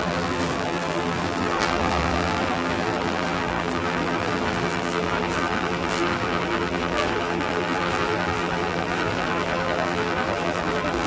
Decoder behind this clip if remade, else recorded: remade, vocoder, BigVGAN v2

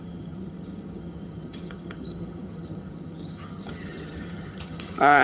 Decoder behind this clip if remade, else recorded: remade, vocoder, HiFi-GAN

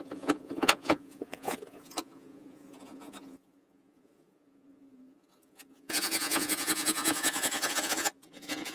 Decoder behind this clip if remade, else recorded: remade, vocoder, Vocos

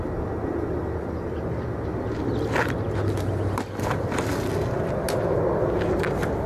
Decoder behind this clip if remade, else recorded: recorded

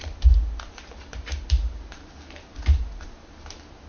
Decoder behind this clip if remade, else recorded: remade, vocoder, BigVGAN v2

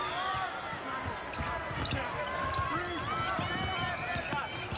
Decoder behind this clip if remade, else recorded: recorded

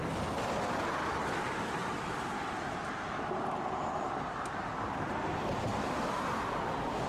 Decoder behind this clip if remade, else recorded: recorded